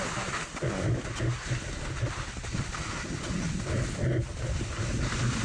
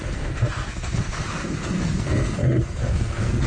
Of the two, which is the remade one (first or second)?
second